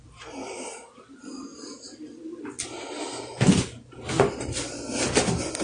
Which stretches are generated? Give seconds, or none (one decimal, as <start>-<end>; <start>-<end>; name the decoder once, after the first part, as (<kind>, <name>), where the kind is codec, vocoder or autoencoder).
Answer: none